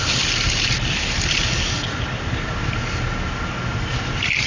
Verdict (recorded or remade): recorded